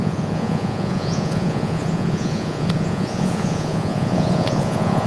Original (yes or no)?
no